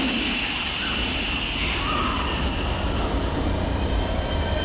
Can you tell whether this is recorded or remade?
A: recorded